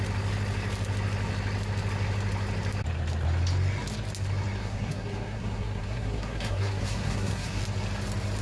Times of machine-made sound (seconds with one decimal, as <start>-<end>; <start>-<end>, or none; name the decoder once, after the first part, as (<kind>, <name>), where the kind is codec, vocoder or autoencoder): 4.6-7.6 (codec, SNAC)